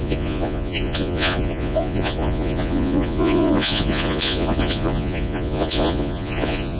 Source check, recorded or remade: remade